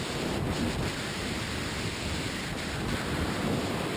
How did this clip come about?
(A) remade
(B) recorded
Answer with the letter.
B